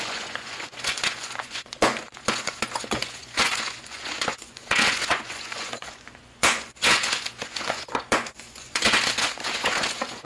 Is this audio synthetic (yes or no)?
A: yes